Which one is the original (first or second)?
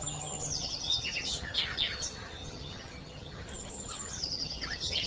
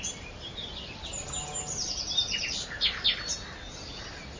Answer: second